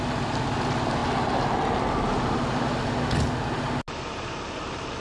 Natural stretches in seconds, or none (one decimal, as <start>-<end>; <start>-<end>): 0.0-5.0